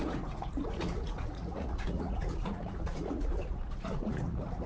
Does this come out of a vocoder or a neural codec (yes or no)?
yes